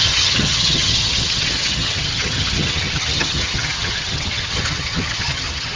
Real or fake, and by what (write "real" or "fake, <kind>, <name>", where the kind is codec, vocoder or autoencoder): fake, vocoder, HiFi-GAN